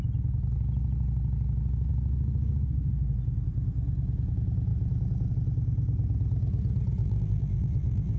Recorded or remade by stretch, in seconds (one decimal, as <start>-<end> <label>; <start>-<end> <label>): 0.0-7.0 recorded; 7.0-8.2 remade

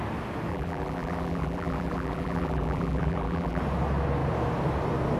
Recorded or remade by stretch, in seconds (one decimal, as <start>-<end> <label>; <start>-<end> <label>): 0.0-0.5 recorded; 0.5-3.6 remade; 3.6-5.2 recorded

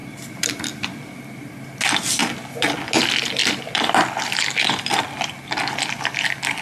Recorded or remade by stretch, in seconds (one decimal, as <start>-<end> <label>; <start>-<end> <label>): 0.0-1.1 remade; 1.1-2.2 recorded; 2.2-2.9 remade; 2.9-3.4 recorded; 3.4-5.3 remade; 5.3-6.6 recorded

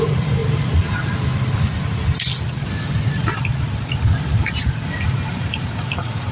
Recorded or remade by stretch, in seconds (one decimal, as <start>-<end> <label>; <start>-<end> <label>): 0.0-0.4 remade; 0.4-4.2 recorded; 4.2-6.3 remade

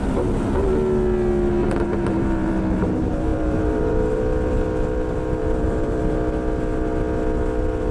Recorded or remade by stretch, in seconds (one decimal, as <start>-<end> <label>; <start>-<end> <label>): 0.0-1.6 recorded; 1.6-2.5 remade; 2.5-3.3 recorded; 3.3-4.2 remade; 4.2-5.4 recorded; 5.4-6.0 remade; 6.0-7.9 recorded